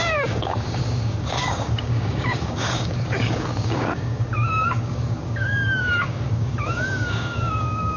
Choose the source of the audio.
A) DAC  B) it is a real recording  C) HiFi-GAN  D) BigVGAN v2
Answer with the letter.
A